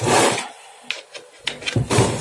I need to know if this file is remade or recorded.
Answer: recorded